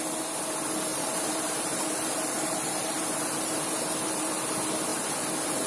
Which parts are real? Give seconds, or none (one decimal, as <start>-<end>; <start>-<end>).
0.0-0.9; 4.3-5.7